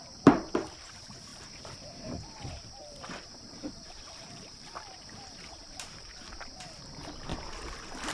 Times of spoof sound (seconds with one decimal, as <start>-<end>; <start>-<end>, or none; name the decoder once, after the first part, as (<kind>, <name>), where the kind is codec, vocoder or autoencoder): 0.0-6.1 (vocoder, BigVGAN v2); 6.6-7.3